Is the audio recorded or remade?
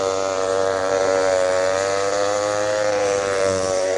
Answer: remade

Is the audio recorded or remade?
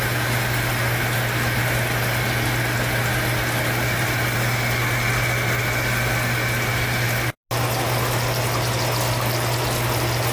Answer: recorded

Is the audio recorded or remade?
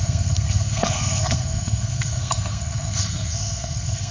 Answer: remade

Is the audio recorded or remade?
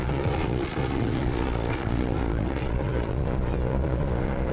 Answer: remade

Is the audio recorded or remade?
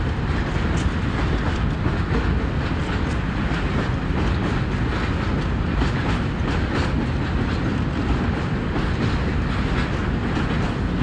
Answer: recorded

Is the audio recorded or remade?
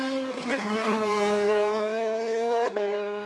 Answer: remade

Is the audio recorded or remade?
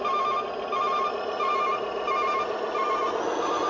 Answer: recorded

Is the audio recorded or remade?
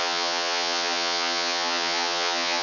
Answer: remade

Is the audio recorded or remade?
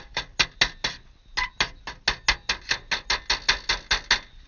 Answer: recorded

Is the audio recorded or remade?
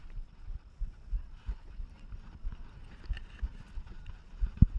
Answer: recorded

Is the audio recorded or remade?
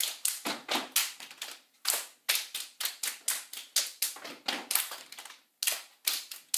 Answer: recorded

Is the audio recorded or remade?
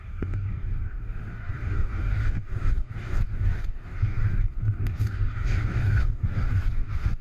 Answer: remade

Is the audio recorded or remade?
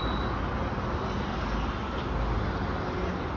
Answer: recorded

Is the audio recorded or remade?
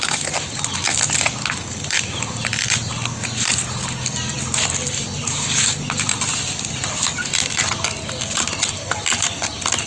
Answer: recorded